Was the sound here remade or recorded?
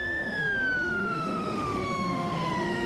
remade